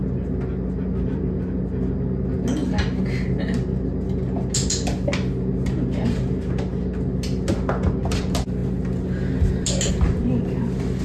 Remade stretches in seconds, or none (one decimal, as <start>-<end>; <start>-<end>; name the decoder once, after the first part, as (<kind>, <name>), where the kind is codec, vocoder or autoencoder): none